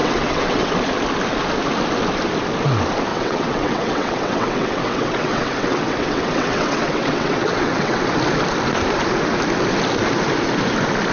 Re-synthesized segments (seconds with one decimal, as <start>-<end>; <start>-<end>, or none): 0.0-0.7; 3.1-8.0